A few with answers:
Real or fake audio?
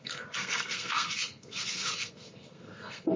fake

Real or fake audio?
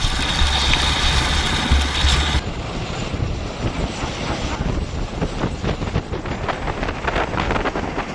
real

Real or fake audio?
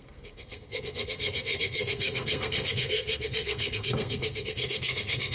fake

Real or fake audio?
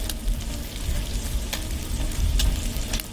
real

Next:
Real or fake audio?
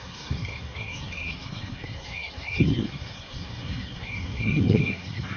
fake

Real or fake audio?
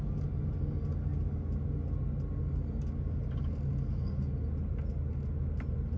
real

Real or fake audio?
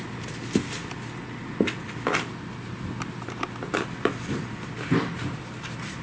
real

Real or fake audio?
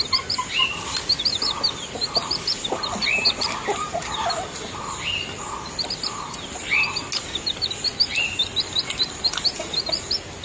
real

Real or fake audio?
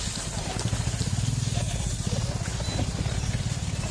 real